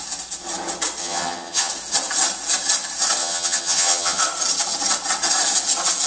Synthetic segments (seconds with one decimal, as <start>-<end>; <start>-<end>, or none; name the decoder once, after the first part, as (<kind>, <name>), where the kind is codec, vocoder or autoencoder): 1.0-1.7 (vocoder, HiFi-GAN); 3.2-4.2